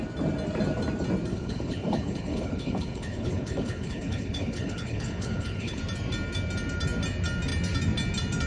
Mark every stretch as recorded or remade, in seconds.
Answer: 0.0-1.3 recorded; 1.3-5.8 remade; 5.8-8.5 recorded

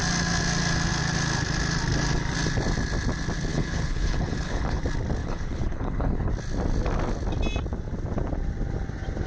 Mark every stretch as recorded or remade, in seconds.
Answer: 0.0-3.5 recorded; 3.5-4.8 remade; 4.8-5.2 recorded; 5.2-6.3 remade; 6.3-9.3 recorded

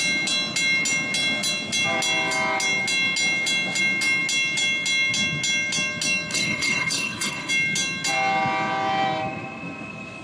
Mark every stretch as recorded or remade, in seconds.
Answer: 0.0-6.3 recorded; 6.3-7.5 remade; 7.5-10.2 recorded

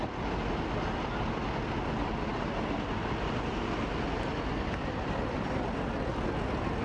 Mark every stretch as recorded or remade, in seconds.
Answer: 0.0-6.8 recorded

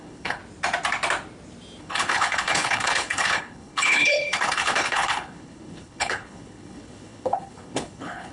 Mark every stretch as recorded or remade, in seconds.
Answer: 0.0-0.4 remade; 0.4-1.8 recorded; 1.8-8.3 remade

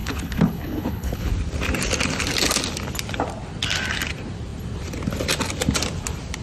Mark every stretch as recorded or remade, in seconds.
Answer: 0.0-1.3 remade; 1.3-6.4 recorded

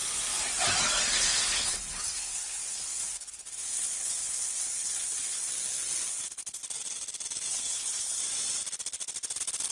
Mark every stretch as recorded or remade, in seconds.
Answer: 0.0-1.1 recorded; 1.1-5.5 remade; 5.5-6.1 recorded; 6.1-6.6 remade; 6.6-7.5 recorded; 7.5-8.2 remade; 8.2-9.7 recorded

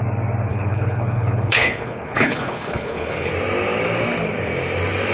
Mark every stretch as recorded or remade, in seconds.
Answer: 0.0-0.5 recorded; 0.5-3.3 remade; 3.3-5.1 recorded